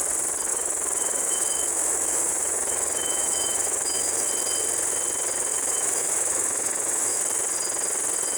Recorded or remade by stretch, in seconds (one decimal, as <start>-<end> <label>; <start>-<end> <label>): 0.0-0.5 recorded; 0.5-4.3 remade; 4.3-5.5 recorded; 5.5-7.2 remade; 7.2-8.4 recorded